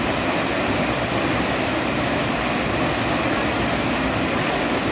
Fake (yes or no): no